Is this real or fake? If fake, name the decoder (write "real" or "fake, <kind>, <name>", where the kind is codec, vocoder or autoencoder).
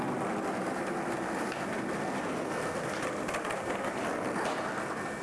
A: real